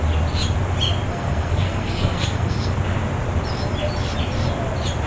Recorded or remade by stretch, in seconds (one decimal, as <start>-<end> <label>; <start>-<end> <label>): 0.0-1.1 recorded; 1.1-2.8 remade; 2.8-5.1 recorded